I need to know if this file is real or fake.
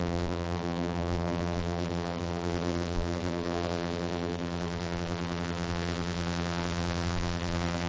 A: fake